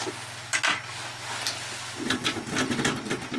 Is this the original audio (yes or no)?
yes